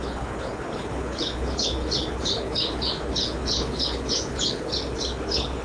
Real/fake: fake